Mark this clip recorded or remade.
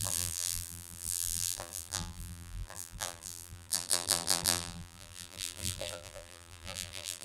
remade